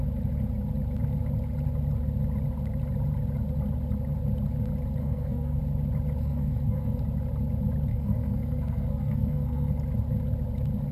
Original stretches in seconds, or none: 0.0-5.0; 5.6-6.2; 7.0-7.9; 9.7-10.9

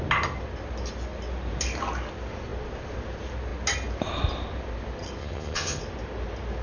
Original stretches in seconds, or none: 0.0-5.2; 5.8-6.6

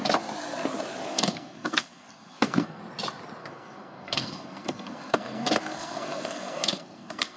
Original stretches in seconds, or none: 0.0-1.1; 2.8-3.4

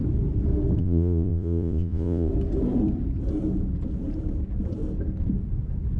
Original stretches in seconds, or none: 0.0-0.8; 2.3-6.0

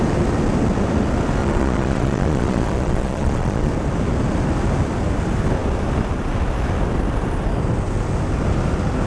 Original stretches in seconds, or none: 0.0-1.4; 3.7-9.1

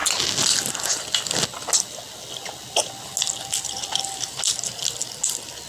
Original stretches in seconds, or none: 0.0-5.7

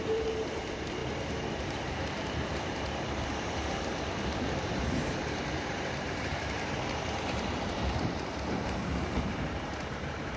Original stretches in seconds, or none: 1.0-2.0